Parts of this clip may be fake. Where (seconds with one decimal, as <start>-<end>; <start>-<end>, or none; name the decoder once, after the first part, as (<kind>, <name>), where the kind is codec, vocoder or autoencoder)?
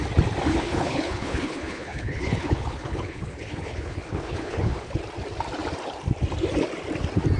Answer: 0.5-4.9 (codec, HILCodec)